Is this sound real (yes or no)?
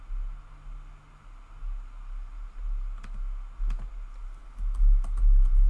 yes